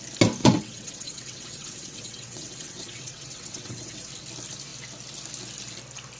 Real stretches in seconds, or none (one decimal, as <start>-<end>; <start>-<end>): 0.0-0.4; 4.1-6.2